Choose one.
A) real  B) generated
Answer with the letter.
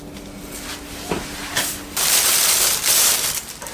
A